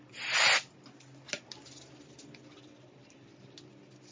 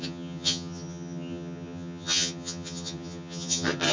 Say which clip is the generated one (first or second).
second